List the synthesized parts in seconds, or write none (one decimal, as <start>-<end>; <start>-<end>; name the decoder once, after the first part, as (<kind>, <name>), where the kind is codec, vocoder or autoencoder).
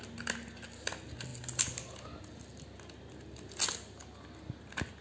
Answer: none